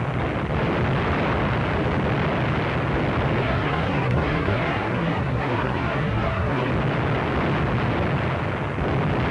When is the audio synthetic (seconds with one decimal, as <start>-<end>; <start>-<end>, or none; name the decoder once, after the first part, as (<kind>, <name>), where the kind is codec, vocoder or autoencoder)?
3.4-6.7 (codec, SNAC)